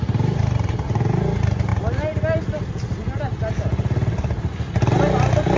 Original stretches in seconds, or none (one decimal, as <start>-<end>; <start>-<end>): 0.0-5.6